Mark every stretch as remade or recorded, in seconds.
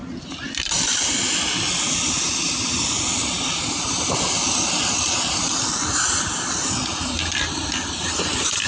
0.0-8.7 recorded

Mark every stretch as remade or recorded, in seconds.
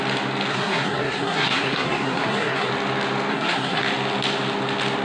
0.0-0.5 recorded; 0.5-2.7 remade; 2.7-3.3 recorded; 3.3-3.8 remade; 3.8-5.0 recorded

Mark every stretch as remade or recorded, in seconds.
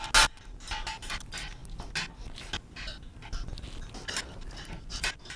0.0-5.4 recorded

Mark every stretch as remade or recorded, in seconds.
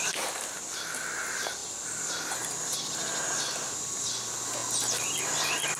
0.0-5.8 recorded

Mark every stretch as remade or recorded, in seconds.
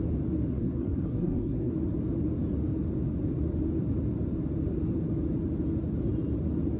0.0-0.5 recorded; 0.5-1.7 remade; 1.7-6.8 recorded